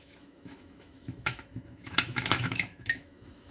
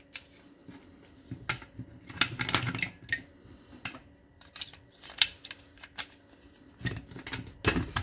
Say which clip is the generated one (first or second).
first